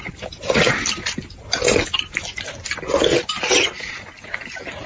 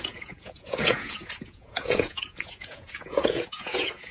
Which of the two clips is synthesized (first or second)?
second